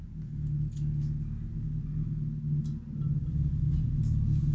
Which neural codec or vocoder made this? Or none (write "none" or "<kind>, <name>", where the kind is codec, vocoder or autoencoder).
none